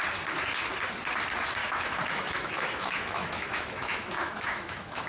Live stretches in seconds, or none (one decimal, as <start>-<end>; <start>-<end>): 0.0-1.6